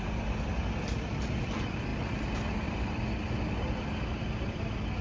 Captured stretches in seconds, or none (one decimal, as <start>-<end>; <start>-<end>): 0.0-5.0